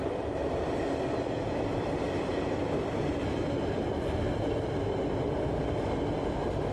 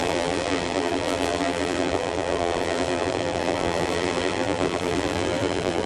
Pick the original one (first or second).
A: first